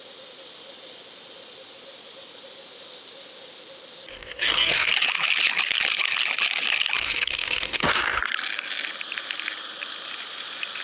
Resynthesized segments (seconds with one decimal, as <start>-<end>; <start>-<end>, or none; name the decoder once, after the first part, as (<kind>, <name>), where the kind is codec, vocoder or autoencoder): 4.1-4.9 (codec, DAC); 7.0-8.2